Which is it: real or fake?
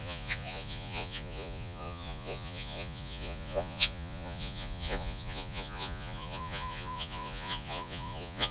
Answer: fake